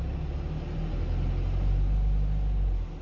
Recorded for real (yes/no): yes